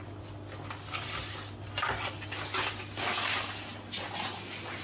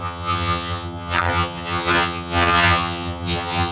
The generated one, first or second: second